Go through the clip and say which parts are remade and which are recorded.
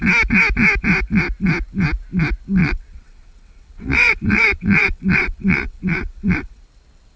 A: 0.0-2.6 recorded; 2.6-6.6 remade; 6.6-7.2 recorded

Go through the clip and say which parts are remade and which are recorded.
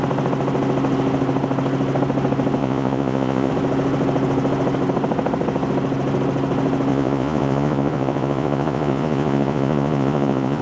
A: 0.0-2.6 recorded; 2.6-3.5 remade; 3.5-6.9 recorded; 6.9-10.6 remade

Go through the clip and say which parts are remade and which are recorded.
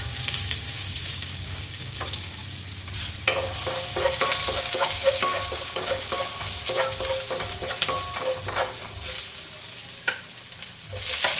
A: 0.0-2.4 remade; 2.4-4.6 recorded; 4.6-6.3 remade; 6.3-11.4 recorded